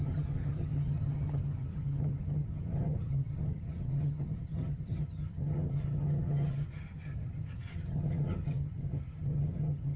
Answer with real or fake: fake